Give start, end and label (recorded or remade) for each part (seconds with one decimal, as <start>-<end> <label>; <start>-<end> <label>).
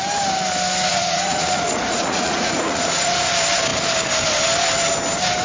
0.0-0.9 recorded; 0.9-3.3 remade; 3.3-5.4 recorded